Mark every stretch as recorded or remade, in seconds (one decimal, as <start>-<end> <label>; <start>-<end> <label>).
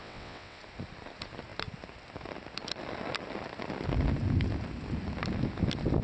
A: 0.0-0.6 remade; 0.6-6.0 recorded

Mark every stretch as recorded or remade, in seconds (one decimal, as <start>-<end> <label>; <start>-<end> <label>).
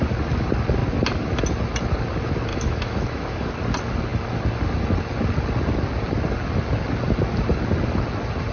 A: 0.0-2.5 recorded; 2.5-3.5 remade; 3.5-8.5 recorded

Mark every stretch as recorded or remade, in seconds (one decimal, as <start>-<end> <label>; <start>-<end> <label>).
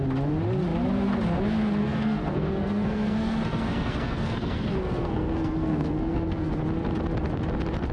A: 0.0-1.8 recorded; 1.8-6.5 remade; 6.5-7.9 recorded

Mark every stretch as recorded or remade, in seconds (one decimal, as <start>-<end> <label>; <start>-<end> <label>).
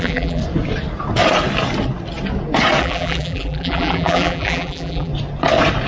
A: 0.0-0.4 remade; 0.4-2.8 recorded; 2.8-5.1 remade; 5.1-5.9 recorded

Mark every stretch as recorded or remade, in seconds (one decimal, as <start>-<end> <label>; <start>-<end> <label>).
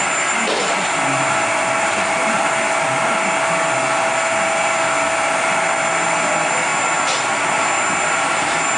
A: 0.0-8.8 recorded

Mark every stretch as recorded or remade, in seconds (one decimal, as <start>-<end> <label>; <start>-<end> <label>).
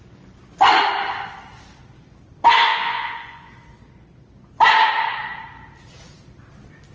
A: 0.0-2.7 recorded; 2.7-3.5 remade; 3.5-6.9 recorded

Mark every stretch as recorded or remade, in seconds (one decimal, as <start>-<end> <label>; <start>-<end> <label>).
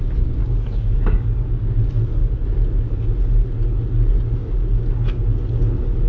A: 0.0-0.4 recorded; 0.4-1.7 remade; 1.7-6.1 recorded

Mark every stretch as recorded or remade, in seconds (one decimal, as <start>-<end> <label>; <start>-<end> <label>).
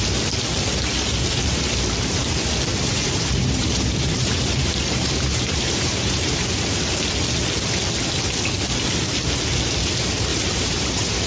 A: 0.0-2.7 recorded; 2.7-6.4 remade; 6.4-10.3 recorded; 10.3-11.3 remade